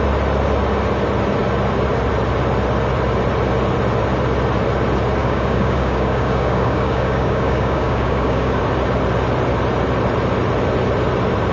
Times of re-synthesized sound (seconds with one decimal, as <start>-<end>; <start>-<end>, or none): 5.2-8.6